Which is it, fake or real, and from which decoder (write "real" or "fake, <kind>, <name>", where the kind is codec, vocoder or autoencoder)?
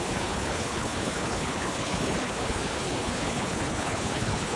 fake, codec, HILCodec